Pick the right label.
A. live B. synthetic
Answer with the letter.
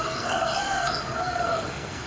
B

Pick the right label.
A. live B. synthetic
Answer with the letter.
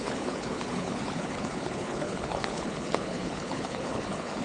B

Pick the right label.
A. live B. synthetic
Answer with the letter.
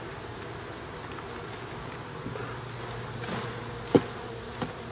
A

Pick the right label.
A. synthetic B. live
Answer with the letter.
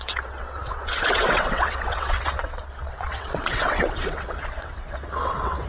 A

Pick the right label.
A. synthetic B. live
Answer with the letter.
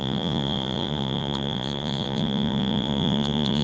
A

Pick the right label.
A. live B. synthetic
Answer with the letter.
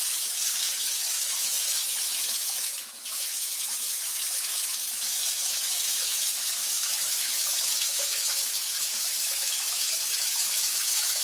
B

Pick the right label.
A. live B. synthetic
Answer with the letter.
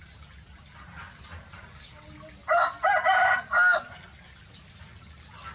A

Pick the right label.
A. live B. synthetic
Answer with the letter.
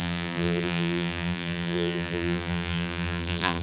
B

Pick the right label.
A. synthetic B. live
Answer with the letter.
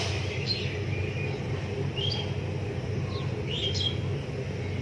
B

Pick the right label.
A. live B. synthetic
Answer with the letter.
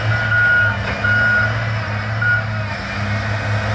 A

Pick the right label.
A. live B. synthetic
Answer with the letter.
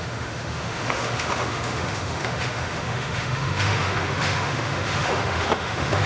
B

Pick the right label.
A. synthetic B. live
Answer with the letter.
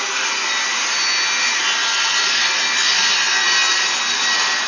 B